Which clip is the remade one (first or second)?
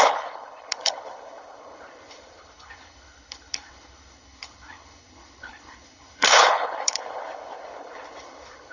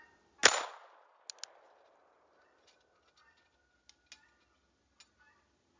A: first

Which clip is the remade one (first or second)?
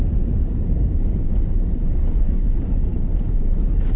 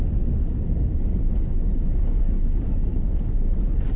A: first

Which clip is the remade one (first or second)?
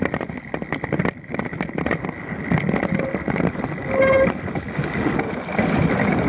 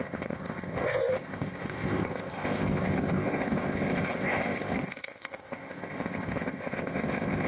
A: second